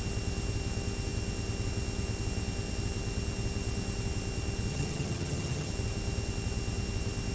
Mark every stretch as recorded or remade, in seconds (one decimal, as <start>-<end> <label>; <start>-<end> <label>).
0.0-4.7 recorded; 4.7-5.7 remade; 5.7-7.3 recorded